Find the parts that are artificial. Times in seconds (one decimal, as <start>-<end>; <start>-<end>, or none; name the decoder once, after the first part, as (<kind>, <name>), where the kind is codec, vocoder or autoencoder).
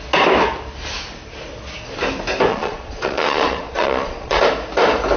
2.5-4.4 (vocoder, Vocos)